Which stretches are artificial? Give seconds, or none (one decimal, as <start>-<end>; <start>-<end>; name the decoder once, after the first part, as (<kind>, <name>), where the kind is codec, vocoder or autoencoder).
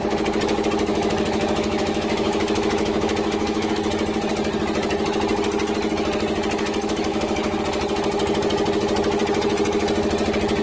0.9-3.7 (autoencoder, DAC-VAE); 7.1-7.6